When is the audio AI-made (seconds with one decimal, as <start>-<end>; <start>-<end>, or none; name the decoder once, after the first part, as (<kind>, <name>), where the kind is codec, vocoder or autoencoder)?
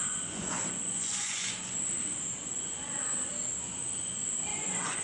0.0-1.8 (vocoder, Vocos); 2.5-3.0; 4.5-5.0